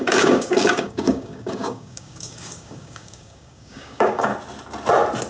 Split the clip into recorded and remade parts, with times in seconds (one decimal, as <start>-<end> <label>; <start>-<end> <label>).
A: 0.0-4.3 remade; 4.3-5.3 recorded